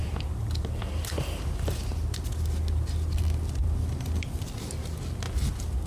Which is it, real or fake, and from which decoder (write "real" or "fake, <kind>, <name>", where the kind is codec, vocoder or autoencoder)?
real